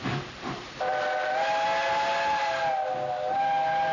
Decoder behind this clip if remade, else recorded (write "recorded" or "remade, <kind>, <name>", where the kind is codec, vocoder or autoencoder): recorded